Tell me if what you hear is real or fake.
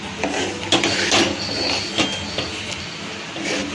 real